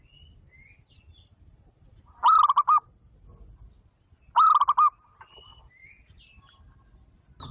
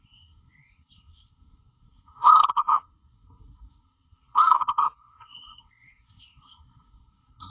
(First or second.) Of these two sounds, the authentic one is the first